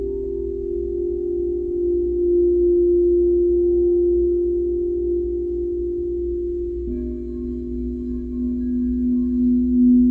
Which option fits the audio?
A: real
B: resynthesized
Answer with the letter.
A